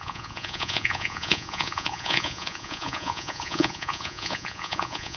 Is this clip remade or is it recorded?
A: remade